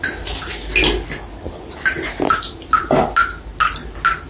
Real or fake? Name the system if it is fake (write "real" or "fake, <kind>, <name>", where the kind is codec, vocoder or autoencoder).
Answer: real